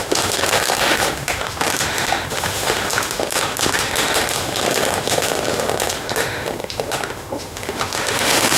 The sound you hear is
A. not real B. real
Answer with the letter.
A